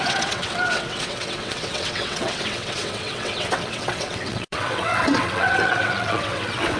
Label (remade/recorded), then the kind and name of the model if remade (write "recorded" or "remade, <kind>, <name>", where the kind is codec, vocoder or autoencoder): remade, vocoder, WaveNeXt